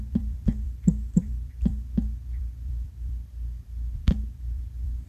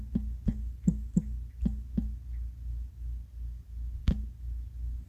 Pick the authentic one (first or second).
second